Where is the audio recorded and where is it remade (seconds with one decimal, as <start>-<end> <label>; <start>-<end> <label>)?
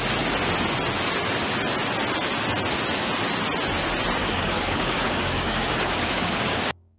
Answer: 0.0-4.2 recorded; 4.2-7.0 remade